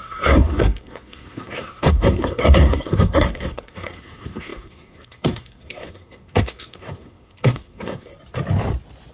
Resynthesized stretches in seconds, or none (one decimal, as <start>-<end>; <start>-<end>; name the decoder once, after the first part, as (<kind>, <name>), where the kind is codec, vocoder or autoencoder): 0.0-8.1 (codec, SNAC)